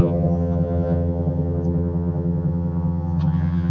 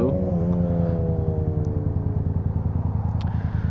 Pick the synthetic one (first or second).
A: first